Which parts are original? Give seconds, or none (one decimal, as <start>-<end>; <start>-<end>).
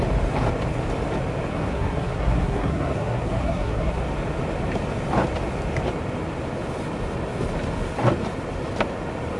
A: 0.0-1.5; 4.0-9.4